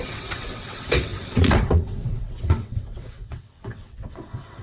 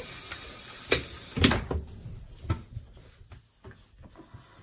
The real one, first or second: second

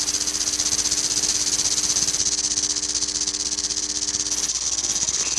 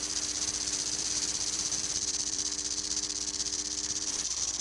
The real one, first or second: first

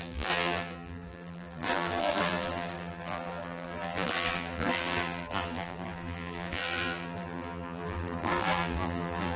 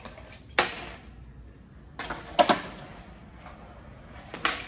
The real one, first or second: second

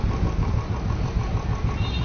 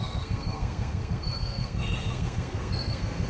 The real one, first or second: first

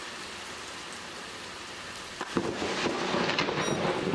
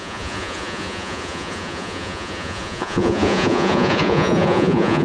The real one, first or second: first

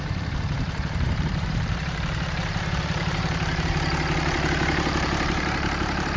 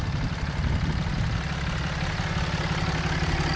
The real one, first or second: second